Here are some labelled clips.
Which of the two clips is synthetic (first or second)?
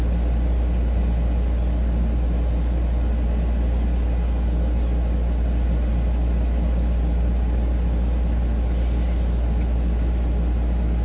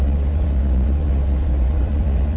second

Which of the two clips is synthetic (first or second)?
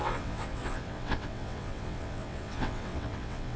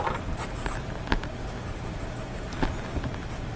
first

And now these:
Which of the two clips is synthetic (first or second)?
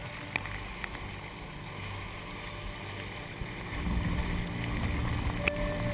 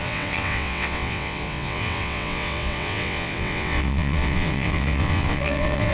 second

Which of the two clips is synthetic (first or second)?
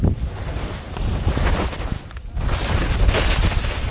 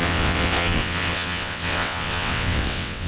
second